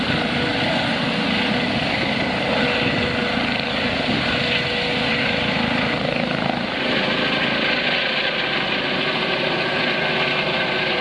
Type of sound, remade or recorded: recorded